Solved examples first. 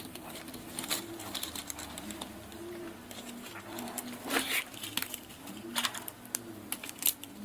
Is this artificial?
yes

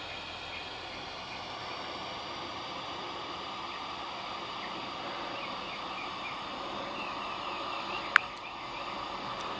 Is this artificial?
no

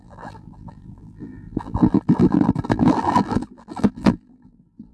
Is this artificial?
yes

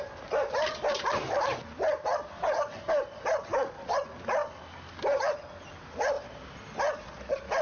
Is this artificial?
no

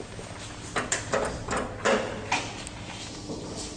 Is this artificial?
no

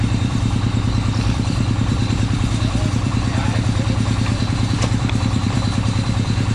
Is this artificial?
yes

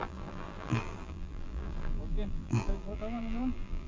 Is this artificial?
yes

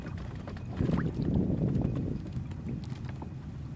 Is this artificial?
no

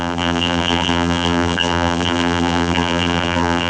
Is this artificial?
yes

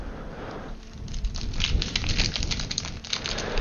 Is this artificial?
yes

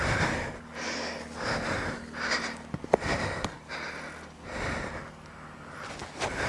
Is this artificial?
no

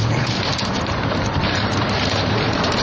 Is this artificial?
yes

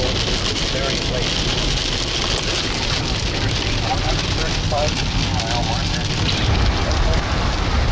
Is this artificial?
no